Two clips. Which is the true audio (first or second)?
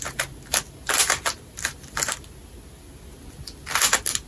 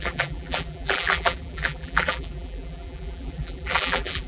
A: first